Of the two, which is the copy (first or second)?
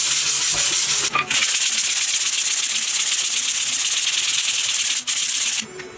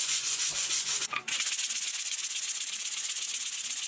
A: second